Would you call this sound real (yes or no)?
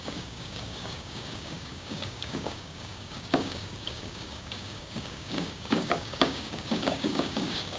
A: no